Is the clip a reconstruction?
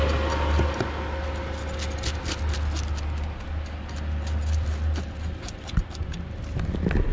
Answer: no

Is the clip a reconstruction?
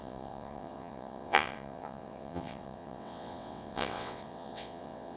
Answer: yes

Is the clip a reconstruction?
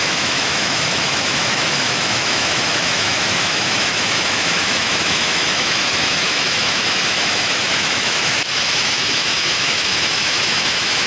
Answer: yes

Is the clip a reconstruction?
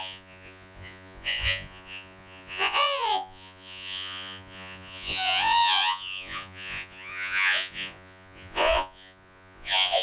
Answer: yes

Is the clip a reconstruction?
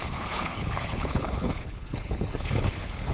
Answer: yes